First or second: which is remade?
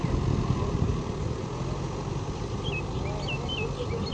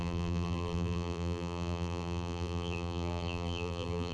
second